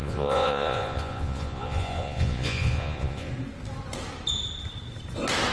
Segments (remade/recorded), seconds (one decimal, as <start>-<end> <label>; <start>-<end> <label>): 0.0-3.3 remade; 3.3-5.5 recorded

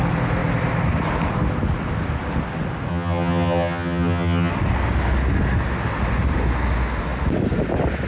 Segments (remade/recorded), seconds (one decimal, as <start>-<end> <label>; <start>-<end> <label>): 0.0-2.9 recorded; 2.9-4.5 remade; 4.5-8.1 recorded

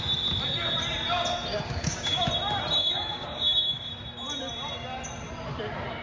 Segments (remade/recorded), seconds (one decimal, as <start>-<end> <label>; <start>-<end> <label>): 0.0-1.5 recorded; 1.5-2.3 remade; 2.3-2.8 recorded; 2.8-3.9 remade; 3.9-6.0 recorded